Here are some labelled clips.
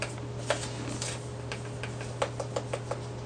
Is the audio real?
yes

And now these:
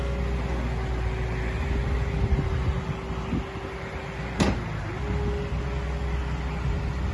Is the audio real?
yes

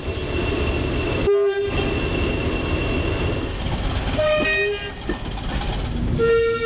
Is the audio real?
yes